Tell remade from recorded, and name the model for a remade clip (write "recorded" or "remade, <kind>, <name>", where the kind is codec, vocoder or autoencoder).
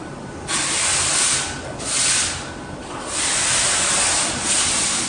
recorded